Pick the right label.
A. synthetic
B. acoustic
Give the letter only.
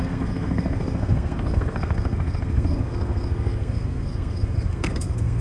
A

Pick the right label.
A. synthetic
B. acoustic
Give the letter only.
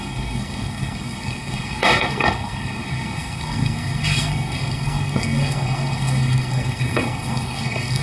A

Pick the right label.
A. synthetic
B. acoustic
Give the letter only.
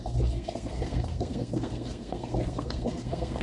A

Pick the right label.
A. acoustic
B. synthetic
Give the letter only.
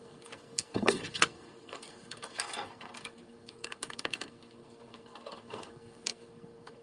B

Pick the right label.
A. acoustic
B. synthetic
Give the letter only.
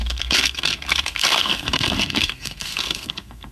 B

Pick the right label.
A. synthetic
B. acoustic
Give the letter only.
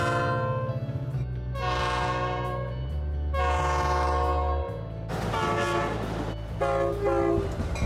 B